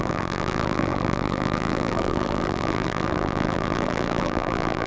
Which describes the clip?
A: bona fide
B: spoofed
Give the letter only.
B